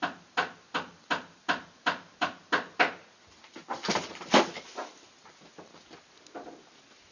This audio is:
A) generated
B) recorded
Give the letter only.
B